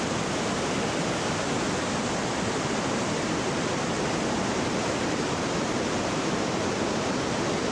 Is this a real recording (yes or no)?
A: yes